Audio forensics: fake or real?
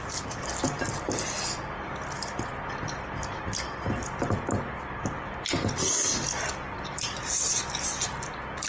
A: real